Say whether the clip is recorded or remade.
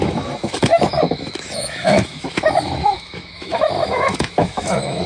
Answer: remade